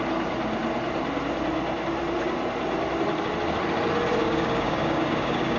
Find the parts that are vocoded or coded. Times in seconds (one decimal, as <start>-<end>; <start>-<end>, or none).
4.2-5.6